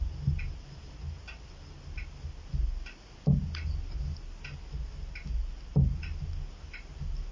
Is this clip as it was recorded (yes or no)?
yes